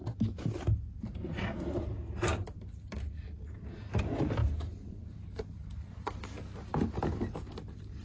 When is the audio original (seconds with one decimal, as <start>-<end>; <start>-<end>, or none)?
0.0-2.3; 3.1-4.4; 6.1-6.7; 7.4-8.0